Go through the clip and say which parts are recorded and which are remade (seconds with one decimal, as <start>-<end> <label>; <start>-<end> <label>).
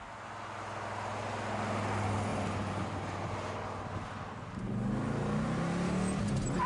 0.0-6.7 recorded